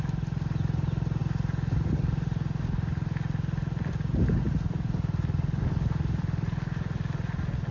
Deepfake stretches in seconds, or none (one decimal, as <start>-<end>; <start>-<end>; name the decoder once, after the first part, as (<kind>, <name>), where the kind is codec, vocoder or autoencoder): none